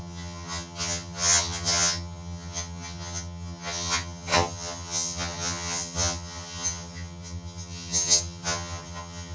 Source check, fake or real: fake